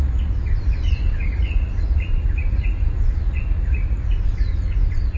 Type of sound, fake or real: fake